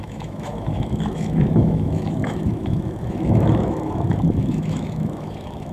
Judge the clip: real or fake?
fake